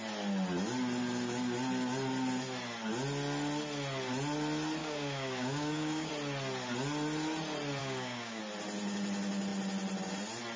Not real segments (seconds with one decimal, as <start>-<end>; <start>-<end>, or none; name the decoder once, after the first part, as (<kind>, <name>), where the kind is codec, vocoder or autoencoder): 4.8-6.1 (codec, DAC); 7.8-8.4